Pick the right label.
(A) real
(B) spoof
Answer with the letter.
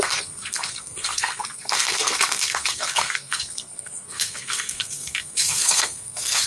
B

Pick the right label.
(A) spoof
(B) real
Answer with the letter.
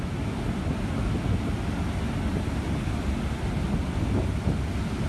B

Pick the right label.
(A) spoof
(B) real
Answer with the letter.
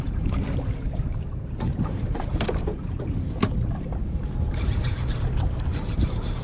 A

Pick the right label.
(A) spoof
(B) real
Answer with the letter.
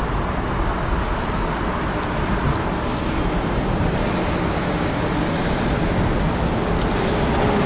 B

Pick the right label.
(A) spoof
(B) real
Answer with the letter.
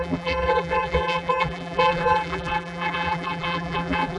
A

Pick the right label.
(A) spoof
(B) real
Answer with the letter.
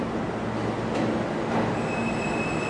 B